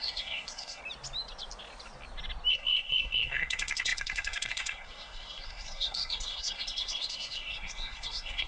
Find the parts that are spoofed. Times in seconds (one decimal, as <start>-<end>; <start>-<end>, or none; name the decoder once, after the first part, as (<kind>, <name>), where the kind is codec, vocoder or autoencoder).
0.0-0.8 (codec, SNAC); 2.5-8.5